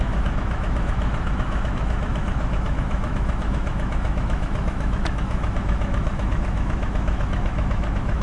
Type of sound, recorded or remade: remade